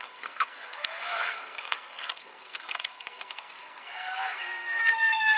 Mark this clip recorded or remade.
remade